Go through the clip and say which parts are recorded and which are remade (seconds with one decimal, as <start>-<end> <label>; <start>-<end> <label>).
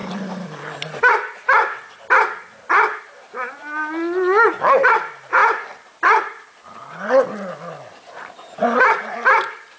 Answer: 0.0-9.8 recorded